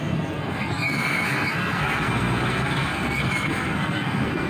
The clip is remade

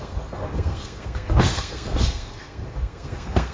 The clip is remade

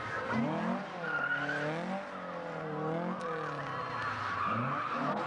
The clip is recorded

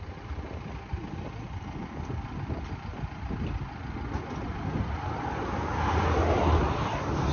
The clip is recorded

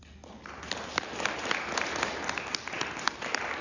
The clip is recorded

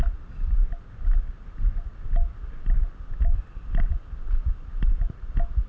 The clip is recorded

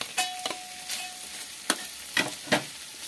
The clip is recorded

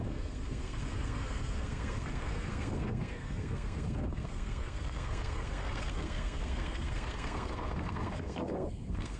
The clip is remade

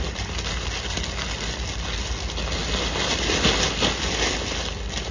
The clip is recorded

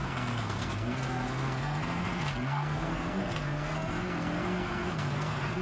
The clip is remade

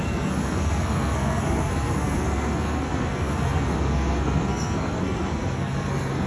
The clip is remade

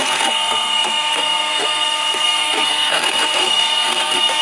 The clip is remade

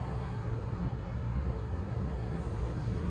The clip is remade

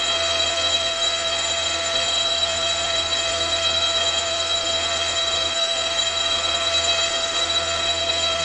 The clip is remade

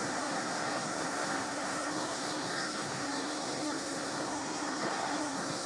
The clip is remade